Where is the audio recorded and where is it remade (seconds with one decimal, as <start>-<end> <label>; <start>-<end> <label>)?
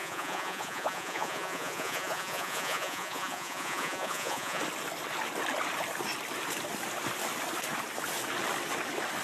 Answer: 0.0-4.6 remade; 4.6-9.2 recorded